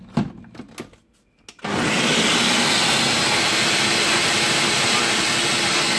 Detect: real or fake real